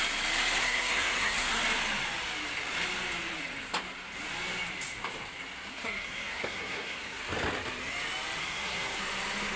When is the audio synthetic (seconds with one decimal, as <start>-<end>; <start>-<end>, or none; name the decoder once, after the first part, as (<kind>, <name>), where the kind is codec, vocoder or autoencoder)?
0.6-1.6 (codec, SNAC); 5.7-7.2; 8.4-9.0